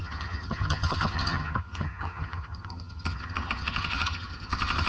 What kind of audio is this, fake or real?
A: fake